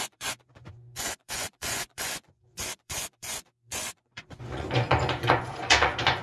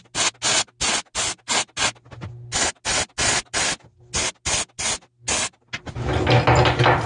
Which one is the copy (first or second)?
first